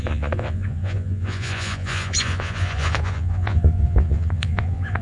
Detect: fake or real fake